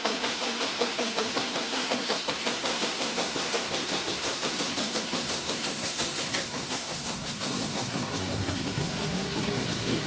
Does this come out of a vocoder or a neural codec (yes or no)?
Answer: yes